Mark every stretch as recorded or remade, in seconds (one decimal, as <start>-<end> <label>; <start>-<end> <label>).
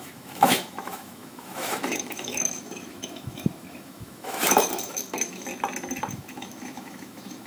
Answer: 0.0-5.5 remade; 5.5-6.1 recorded; 6.1-7.5 remade